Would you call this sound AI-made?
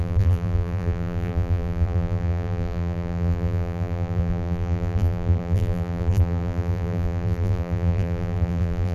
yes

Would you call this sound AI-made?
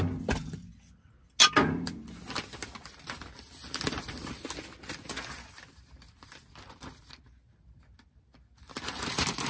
no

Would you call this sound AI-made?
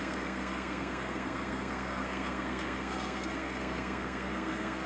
yes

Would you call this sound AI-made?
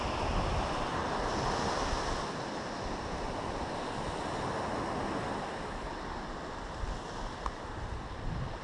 no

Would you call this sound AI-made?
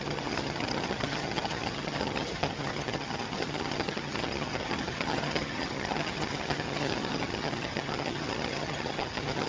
yes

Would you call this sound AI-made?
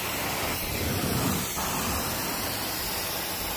yes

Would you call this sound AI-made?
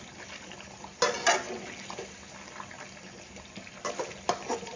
no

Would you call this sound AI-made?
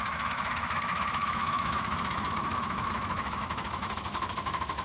yes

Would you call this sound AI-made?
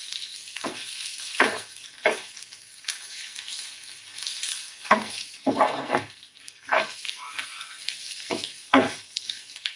yes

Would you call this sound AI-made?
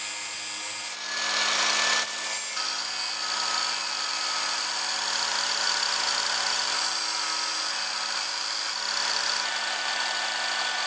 no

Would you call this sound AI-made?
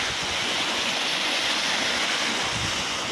yes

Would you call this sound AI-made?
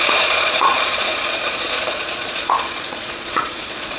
yes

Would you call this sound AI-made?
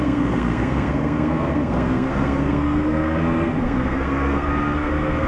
yes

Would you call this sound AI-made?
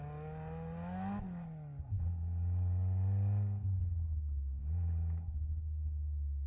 no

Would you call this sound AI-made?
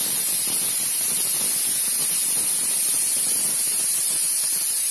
no